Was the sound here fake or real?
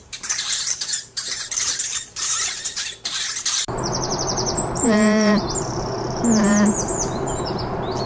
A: fake